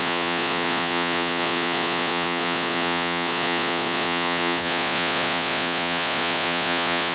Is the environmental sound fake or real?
fake